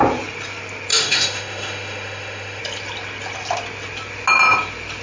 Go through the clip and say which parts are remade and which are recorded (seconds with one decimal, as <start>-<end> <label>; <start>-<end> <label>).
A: 0.0-0.9 recorded; 0.9-2.6 remade; 2.6-5.0 recorded